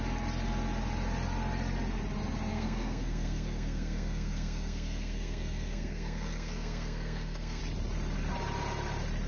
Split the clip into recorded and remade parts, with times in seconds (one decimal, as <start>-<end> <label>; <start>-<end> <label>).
0.0-2.5 recorded; 2.5-7.6 remade; 7.6-9.3 recorded